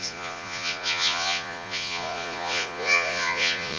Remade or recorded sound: remade